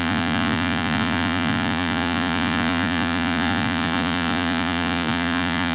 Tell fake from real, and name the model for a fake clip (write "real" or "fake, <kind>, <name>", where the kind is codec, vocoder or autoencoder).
fake, vocoder, Vocos